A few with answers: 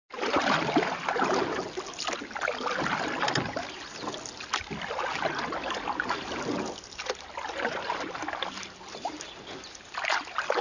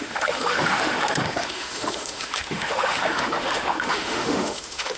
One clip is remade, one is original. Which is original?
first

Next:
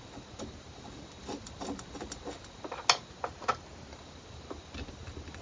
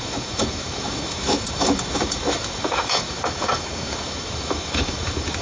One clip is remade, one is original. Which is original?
first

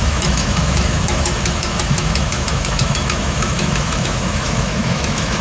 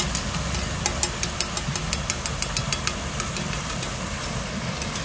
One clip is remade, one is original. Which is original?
second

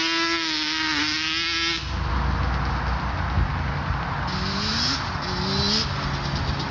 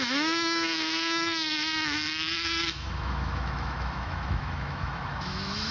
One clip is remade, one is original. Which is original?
first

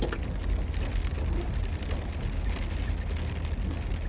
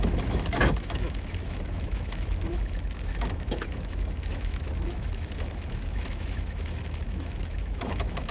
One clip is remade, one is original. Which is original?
first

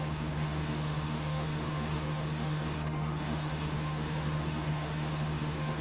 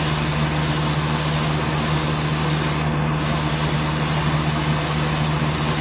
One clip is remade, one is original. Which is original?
second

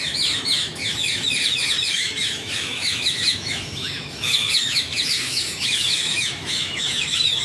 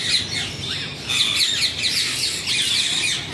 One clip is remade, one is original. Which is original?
second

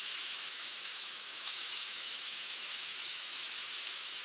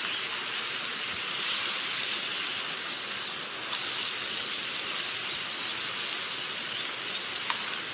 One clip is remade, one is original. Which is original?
second